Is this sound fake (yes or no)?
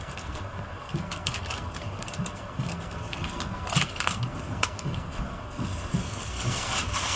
yes